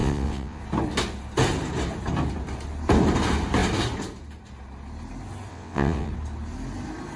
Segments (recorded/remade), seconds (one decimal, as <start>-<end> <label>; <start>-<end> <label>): 0.0-0.6 remade; 0.6-5.5 recorded; 5.5-6.1 remade; 6.1-7.2 recorded